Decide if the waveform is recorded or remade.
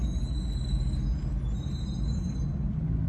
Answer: recorded